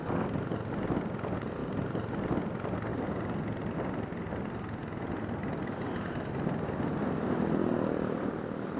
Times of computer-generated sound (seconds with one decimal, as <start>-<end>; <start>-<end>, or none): none